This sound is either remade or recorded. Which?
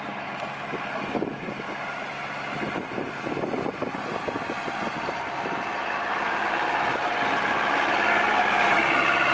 recorded